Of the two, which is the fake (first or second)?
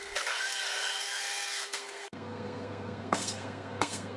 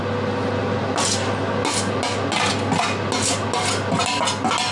first